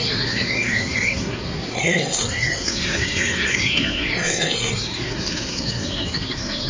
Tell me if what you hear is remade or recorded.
remade